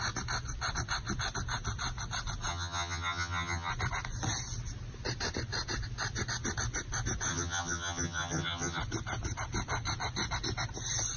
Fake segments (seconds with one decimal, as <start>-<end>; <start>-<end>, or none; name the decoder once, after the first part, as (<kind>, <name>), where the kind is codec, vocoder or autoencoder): 2.5-3.7 (vocoder, HiFi-GAN); 7.3-8.8